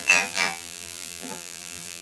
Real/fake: fake